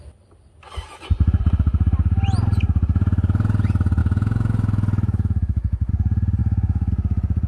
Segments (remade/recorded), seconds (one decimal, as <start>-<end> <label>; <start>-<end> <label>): 0.0-4.0 recorded; 4.0-5.9 remade; 5.9-6.4 recorded; 6.4-6.9 remade; 6.9-7.5 recorded